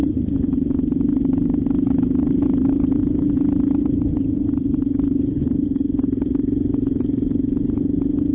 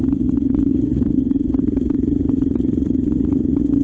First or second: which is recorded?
first